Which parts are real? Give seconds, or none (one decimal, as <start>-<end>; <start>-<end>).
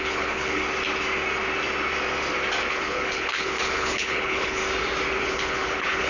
0.6-2.7; 4.6-5.2